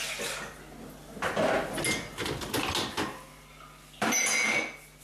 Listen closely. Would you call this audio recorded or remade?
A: recorded